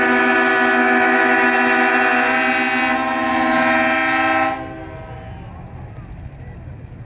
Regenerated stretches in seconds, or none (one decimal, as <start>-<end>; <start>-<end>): none